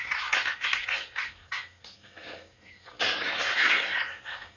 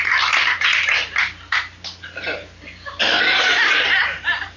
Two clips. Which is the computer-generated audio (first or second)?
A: first